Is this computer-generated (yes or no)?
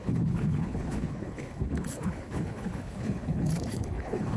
yes